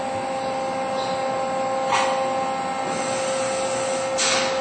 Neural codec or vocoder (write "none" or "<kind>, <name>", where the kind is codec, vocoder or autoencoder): none